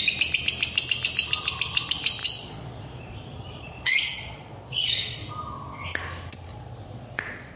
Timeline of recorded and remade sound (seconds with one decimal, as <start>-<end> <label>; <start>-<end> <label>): 0.0-2.2 recorded; 2.2-5.3 remade; 5.3-6.5 recorded; 6.5-7.6 remade